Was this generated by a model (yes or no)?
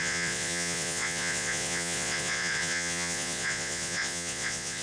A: yes